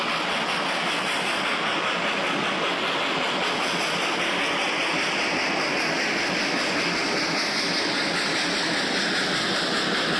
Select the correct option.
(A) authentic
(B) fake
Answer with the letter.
A